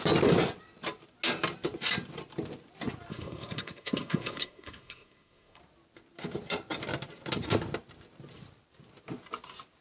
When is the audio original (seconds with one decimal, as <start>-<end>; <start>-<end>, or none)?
0.0-3.1; 5.6-9.8